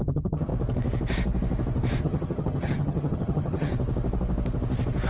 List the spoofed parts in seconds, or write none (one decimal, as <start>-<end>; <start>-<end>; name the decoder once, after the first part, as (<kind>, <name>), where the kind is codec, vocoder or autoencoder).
0.0-0.5 (vocoder, HiFi-GAN); 2.0-3.7